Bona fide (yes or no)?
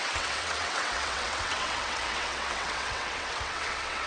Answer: no